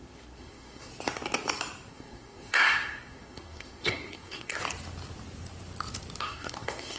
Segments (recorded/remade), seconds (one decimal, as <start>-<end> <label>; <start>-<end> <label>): 0.0-0.9 remade; 0.9-1.9 recorded; 1.9-4.6 remade; 4.6-6.2 recorded; 6.2-7.0 remade

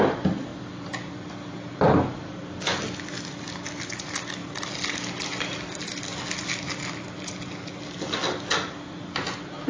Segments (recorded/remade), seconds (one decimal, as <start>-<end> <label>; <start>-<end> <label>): 0.0-9.7 recorded

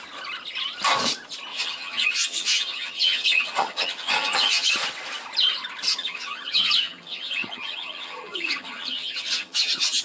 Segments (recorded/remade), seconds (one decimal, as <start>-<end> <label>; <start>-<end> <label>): 0.0-1.5 recorded; 1.5-4.7 remade; 4.7-6.0 recorded; 6.0-10.0 remade

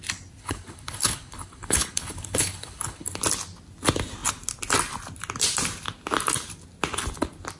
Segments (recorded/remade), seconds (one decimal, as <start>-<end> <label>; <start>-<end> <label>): 0.0-0.4 recorded; 0.4-3.2 remade; 3.2-7.6 recorded

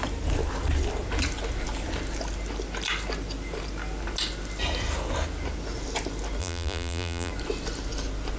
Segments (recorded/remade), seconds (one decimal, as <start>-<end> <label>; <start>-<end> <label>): 0.0-6.4 recorded; 6.4-7.3 remade; 7.3-8.4 recorded

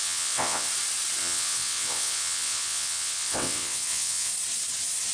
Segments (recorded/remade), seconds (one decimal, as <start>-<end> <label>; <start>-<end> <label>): 0.0-0.7 remade; 0.7-1.2 recorded; 1.2-4.3 remade; 4.3-5.1 recorded

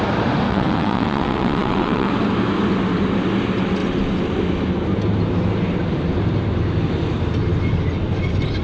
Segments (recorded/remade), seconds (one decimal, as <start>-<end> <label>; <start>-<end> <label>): 0.0-0.5 recorded; 0.5-2.1 remade; 2.1-8.6 recorded

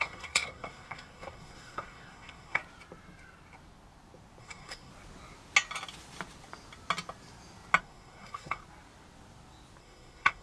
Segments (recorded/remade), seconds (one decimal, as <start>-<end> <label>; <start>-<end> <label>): 0.0-2.6 remade; 2.6-4.4 recorded; 4.4-4.9 remade; 4.9-7.8 recorded; 7.8-8.6 remade; 8.6-9.8 recorded; 9.8-10.4 remade